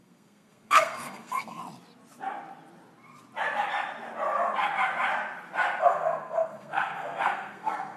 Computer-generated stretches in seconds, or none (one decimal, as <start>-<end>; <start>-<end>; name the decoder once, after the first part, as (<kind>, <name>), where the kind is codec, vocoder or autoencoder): 0.0-1.6 (codec, SNAC); 5.8-8.0